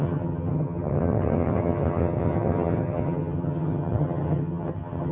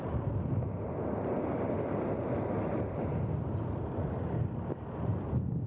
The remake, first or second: first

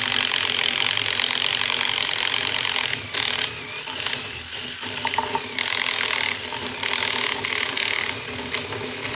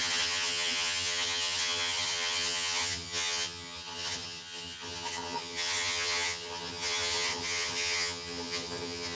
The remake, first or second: second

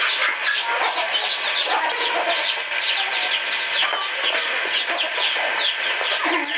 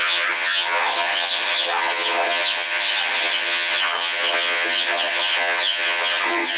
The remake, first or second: second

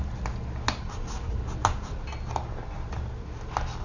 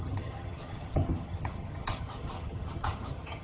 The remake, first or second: second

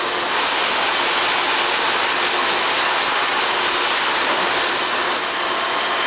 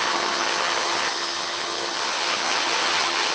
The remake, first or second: second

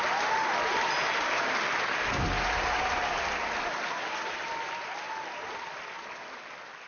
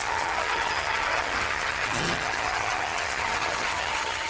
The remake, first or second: second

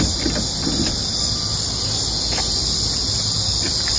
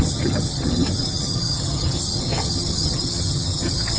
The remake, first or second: second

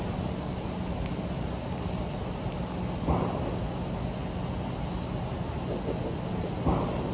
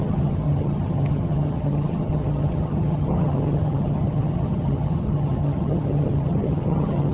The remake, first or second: second